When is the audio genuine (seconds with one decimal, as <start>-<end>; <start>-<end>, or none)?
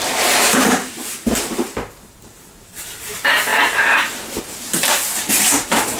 none